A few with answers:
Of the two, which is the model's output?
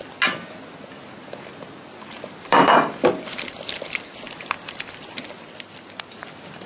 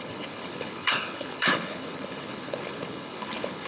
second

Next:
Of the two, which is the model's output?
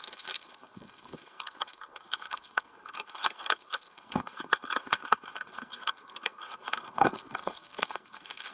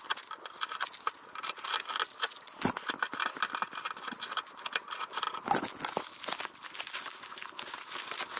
first